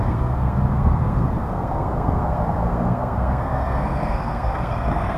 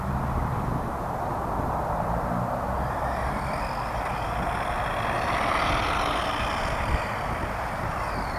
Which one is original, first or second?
second